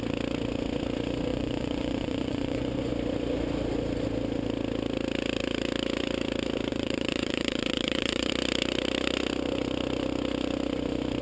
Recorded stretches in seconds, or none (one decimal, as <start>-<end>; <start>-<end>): 0.0-1.3; 2.9-6.7; 8.3-11.2